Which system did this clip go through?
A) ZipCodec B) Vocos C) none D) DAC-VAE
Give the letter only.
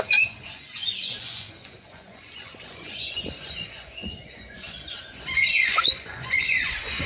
B